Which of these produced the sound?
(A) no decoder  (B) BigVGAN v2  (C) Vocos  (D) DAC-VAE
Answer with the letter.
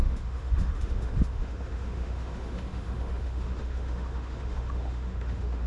D